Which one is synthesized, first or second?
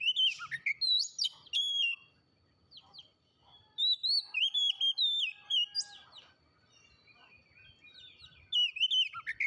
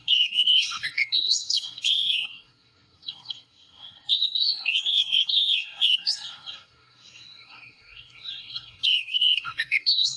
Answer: second